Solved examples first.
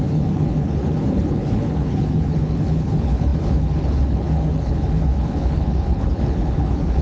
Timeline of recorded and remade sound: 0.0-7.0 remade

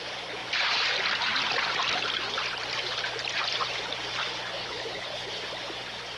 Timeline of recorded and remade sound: 0.0-4.6 recorded; 4.6-5.3 remade; 5.3-6.2 recorded

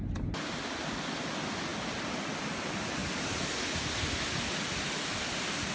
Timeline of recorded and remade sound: 0.0-5.7 recorded

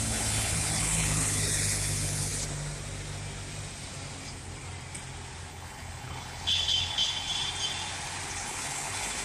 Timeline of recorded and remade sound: 0.0-2.3 remade; 2.3-5.5 recorded; 5.5-7.3 remade; 7.3-8.3 recorded; 8.3-9.2 remade

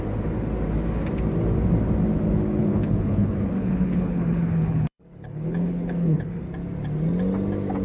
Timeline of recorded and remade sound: 0.0-2.6 recorded; 2.6-6.4 remade; 6.4-7.8 recorded

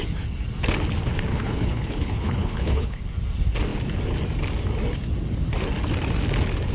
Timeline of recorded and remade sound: 0.0-1.3 recorded; 1.3-3.0 remade; 3.0-6.7 recorded

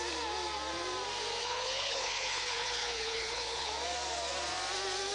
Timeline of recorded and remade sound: 0.0-1.4 recorded; 1.4-3.7 remade; 3.7-5.1 recorded